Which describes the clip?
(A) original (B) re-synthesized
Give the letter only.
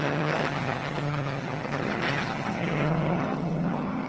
B